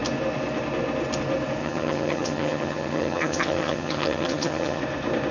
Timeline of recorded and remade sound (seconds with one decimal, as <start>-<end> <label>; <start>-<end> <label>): 0.0-1.6 recorded; 1.6-4.8 remade; 4.8-5.3 recorded